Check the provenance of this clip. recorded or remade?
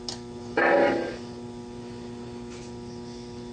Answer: recorded